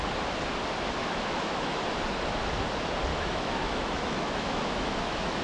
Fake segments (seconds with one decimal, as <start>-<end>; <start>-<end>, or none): 1.0-1.8; 3.1-5.4